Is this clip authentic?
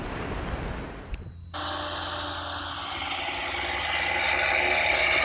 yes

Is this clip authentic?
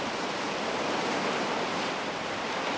yes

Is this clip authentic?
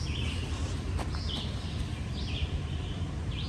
yes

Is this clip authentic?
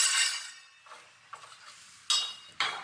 yes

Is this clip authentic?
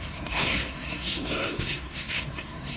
no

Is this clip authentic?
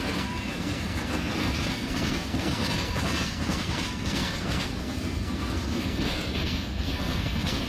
no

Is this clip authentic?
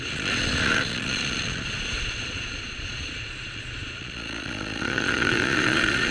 no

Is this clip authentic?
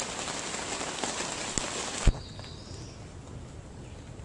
yes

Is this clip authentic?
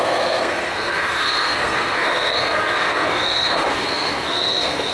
no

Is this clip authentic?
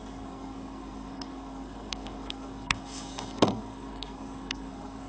no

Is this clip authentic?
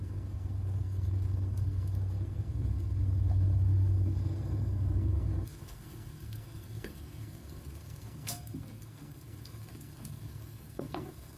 no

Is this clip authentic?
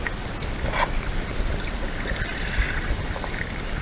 yes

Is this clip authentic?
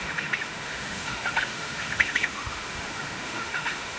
no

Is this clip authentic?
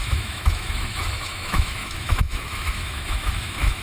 no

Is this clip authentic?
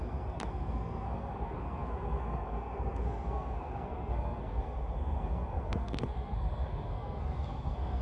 no